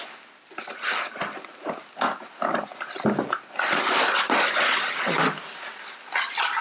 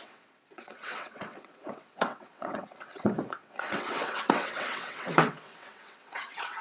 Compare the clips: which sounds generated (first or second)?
second